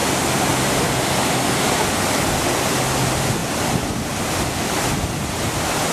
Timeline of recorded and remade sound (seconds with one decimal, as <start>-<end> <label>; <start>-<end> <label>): 0.0-5.9 recorded